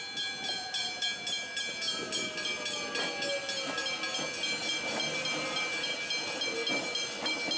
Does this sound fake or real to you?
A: real